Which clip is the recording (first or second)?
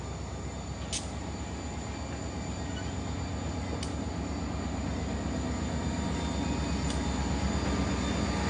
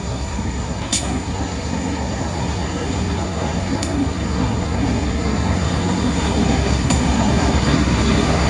first